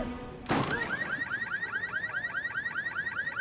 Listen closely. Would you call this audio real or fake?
real